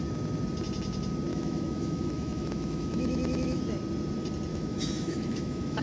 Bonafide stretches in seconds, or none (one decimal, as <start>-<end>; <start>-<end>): 0.0-1.3; 3.6-4.5